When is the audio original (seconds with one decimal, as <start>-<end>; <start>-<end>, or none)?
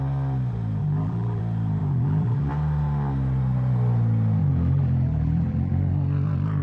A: 0.0-0.8; 1.4-1.8; 2.5-4.4; 5.7-6.6